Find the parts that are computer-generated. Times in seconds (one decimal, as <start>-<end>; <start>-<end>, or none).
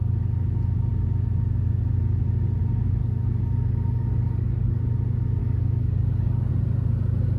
3.0-4.8; 5.4-6.5